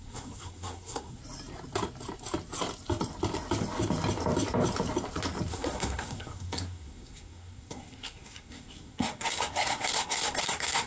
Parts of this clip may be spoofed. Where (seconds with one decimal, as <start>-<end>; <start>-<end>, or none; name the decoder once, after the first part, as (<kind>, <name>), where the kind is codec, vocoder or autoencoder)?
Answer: 0.0-1.2 (codec, SNAC); 5.5-10.9